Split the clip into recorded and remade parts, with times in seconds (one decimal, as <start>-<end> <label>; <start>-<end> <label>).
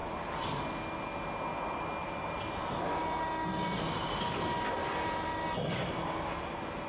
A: 0.0-0.6 remade; 0.6-1.5 recorded; 1.5-2.4 remade; 2.4-4.8 recorded; 4.8-5.3 remade; 5.3-6.9 recorded